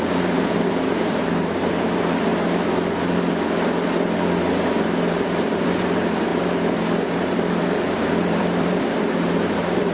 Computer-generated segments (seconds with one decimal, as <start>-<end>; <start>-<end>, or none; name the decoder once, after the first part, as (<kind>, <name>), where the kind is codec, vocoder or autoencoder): 0.0-2.3 (vocoder, BigVGAN v2); 4.7-9.9